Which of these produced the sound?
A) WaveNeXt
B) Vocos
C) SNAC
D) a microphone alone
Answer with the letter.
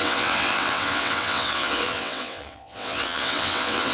A